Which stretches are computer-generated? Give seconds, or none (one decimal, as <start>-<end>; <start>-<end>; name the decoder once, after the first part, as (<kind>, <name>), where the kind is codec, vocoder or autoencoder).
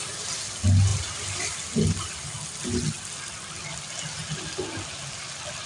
none